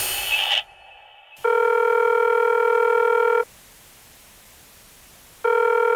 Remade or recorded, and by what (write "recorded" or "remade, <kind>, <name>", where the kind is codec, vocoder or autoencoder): recorded